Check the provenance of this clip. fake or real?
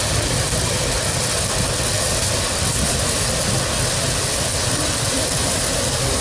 real